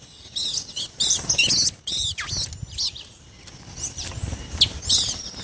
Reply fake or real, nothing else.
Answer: real